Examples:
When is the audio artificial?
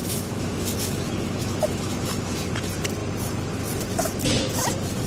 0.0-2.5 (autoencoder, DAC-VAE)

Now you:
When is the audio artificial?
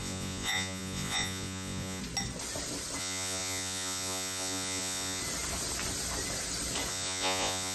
0.0-2.0 (vocoder, Vocos); 3.0-5.2; 6.9-7.7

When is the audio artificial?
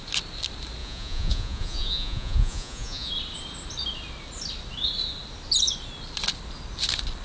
0.8-3.1 (vocoder, Vocos)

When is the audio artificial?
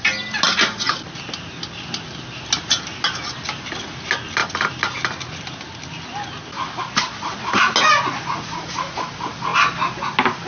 8.3-9.0 (vocoder, Vocos)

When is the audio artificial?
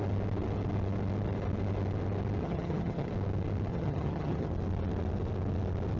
2.4-3.1 (vocoder, HiFi-GAN); 3.7-4.5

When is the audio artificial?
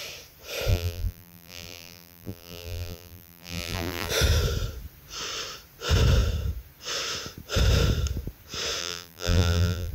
0.7-4.1 (vocoder, BigVGAN v2); 8.8-9.9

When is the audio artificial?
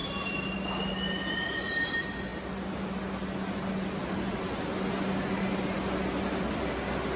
none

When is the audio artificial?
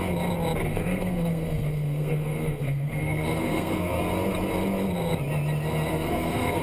0.7-4.0 (codec, SNAC); 5.9-6.6